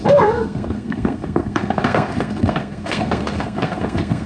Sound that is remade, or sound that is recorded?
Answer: remade